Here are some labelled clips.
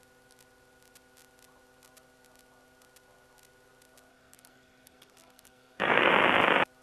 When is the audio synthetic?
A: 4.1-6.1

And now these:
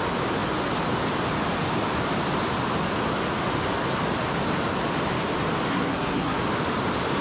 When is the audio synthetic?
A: 5.7-6.4

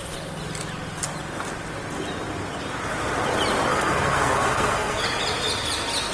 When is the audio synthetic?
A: 3.7-5.0

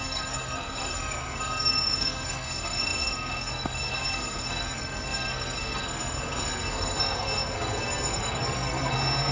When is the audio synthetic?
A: 0.0-9.3